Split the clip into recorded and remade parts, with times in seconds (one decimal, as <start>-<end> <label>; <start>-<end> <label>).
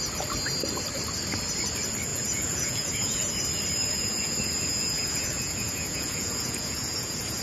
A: 0.0-2.1 recorded; 2.1-3.3 remade; 3.3-3.8 recorded; 3.8-7.4 remade